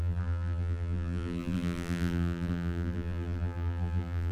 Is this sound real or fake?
fake